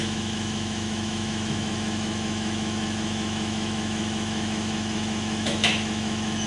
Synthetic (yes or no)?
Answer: yes